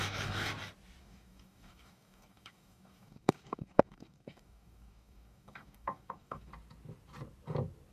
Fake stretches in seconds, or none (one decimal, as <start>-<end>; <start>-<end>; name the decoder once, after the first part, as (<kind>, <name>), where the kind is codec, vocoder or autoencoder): 0.0-0.5 (codec, DAC); 1.0-6.5